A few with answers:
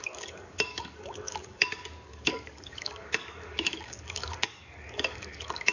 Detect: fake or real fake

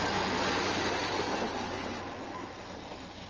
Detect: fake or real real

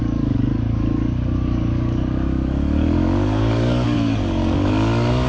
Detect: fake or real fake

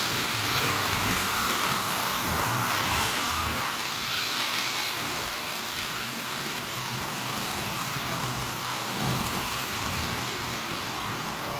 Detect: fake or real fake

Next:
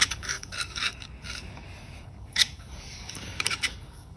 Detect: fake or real fake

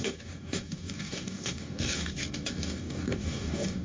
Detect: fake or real fake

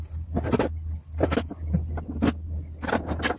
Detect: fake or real real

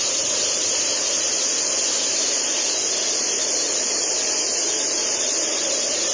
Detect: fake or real real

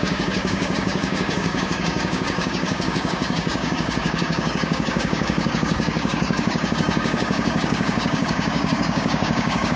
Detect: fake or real fake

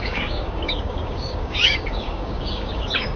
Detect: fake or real fake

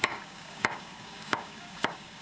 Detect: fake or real fake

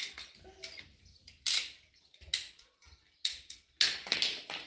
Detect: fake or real real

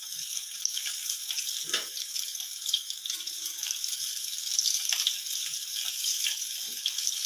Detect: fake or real fake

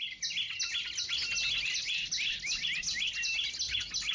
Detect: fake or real real